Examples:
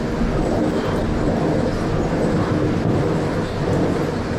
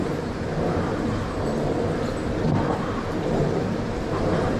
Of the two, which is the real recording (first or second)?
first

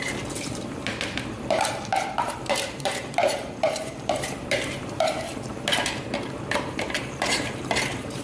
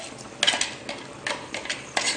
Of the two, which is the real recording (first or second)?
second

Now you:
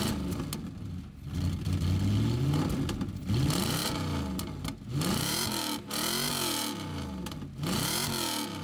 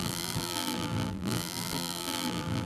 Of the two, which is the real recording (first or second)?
first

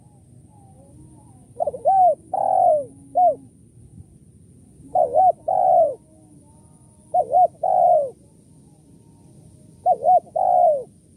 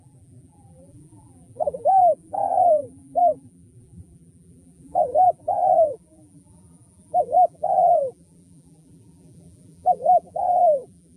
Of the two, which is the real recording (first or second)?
first